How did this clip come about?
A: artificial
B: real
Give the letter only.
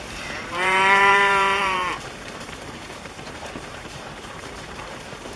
A